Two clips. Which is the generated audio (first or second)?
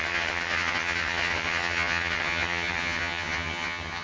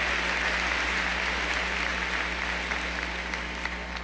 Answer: first